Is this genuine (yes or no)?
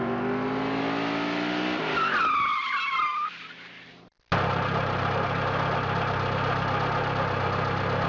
yes